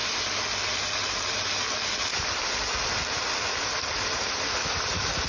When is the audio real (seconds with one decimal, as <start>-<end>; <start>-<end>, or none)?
0.0-5.3